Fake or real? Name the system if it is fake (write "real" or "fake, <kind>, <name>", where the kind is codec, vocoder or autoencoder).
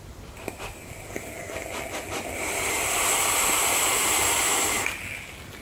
real